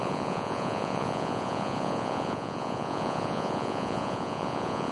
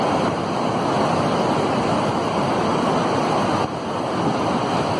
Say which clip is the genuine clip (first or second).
second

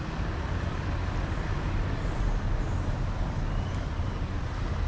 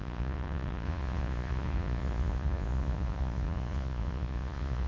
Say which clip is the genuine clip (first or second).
first